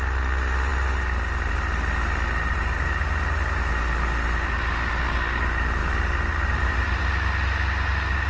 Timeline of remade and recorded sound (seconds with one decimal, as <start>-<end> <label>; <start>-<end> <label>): 0.0-8.3 recorded